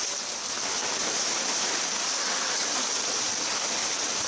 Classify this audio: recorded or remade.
recorded